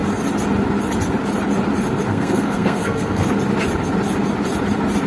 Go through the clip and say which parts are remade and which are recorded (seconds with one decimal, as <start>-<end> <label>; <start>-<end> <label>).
0.0-2.1 recorded; 2.1-3.3 remade; 3.3-5.1 recorded